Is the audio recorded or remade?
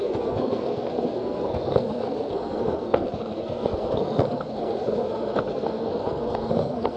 remade